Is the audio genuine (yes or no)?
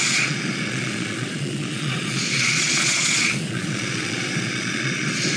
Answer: no